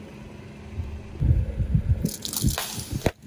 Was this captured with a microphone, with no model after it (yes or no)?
yes